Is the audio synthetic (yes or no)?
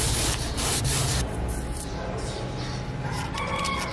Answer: no